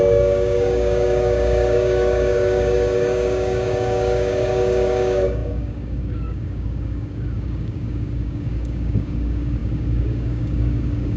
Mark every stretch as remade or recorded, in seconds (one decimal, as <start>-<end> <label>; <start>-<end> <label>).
0.0-11.2 remade